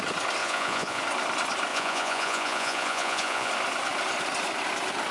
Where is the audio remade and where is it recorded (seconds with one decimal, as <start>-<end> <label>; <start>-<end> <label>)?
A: 0.0-0.4 recorded; 0.4-1.0 remade; 1.0-1.7 recorded; 1.7-3.5 remade; 3.5-5.1 recorded